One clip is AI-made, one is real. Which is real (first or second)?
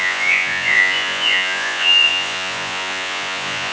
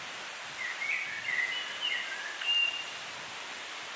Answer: second